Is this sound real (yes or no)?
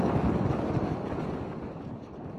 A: no